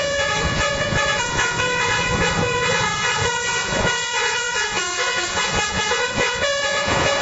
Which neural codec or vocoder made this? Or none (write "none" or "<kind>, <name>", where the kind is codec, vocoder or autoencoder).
vocoder, Vocos